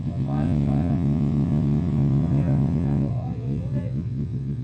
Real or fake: fake